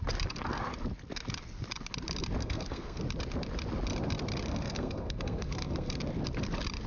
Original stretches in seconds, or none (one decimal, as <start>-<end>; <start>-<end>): 0.0-2.4; 3.0-4.5; 6.0-6.9